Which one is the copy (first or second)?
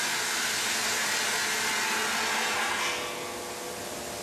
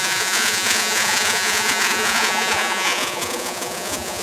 second